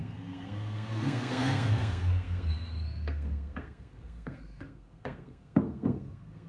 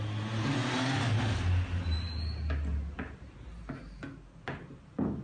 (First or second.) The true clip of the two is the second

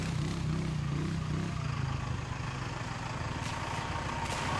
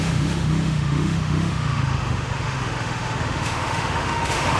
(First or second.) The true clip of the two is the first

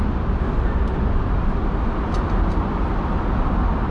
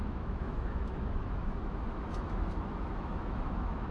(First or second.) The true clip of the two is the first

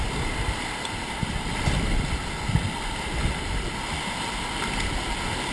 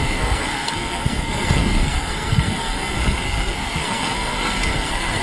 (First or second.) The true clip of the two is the first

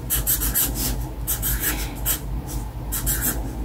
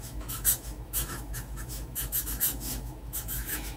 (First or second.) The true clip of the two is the first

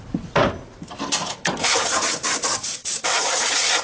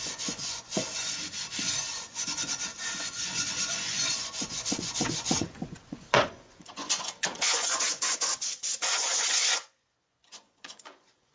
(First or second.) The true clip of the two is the first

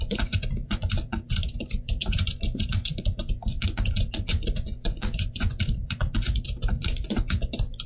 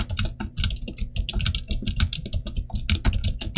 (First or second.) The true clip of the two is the second